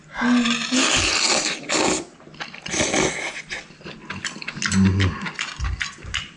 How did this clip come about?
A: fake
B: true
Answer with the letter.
B